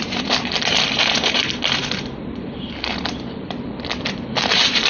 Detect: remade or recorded remade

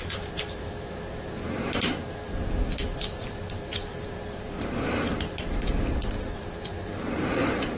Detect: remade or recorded remade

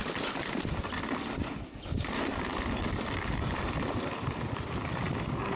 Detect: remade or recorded remade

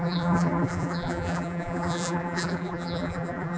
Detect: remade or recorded remade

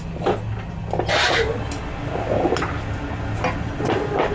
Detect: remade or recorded recorded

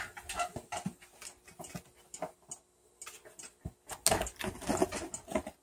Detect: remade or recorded recorded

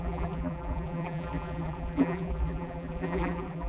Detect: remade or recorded remade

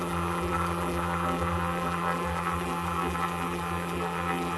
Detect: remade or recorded remade